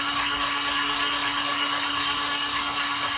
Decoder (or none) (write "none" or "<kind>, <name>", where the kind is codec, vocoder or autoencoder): codec, DAC